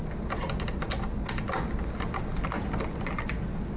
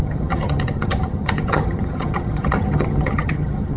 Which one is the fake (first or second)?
second